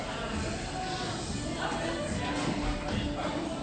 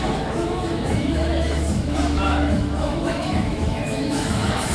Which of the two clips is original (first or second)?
first